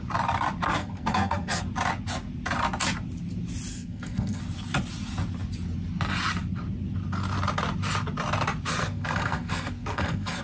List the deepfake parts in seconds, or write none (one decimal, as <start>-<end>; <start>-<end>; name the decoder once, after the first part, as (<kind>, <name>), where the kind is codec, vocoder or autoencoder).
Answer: 0.8-1.6 (codec, SNAC); 3.7-4.4; 8.8-10.4